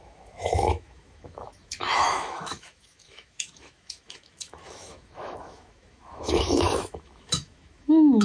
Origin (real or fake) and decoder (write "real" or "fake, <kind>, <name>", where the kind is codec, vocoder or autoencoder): fake, autoencoder, DAC-VAE